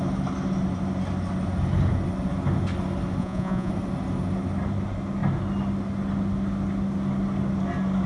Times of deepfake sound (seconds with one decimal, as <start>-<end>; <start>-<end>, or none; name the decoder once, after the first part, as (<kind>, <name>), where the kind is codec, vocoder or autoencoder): 3.2-3.7 (vocoder, Vocos)